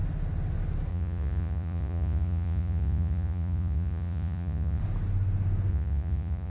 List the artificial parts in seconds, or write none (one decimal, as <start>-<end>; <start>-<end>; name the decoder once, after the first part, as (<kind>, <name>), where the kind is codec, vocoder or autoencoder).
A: 0.9-4.8 (vocoder, Vocos); 5.7-6.5